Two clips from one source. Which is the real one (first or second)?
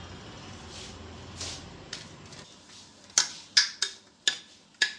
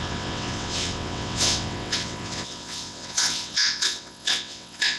first